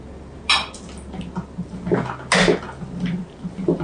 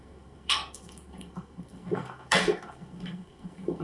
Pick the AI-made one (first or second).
second